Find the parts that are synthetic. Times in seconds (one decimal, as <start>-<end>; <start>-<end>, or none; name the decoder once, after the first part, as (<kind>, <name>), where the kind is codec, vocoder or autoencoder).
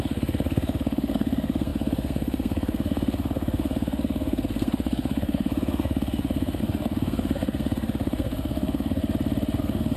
0.0-9.0 (codec, SNAC); 9.6-10.0